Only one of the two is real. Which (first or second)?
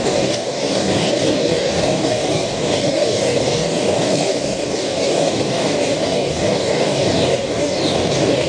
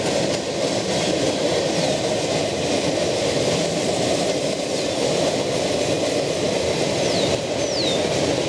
second